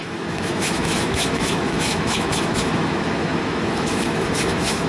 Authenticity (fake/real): fake